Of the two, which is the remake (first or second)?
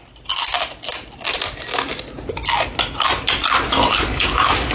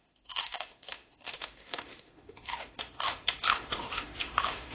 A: second